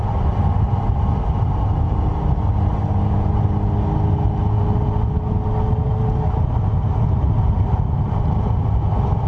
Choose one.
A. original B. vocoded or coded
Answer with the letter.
A